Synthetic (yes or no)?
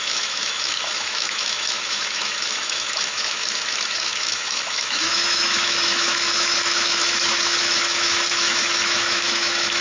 yes